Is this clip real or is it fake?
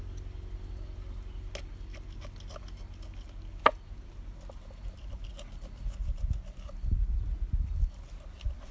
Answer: real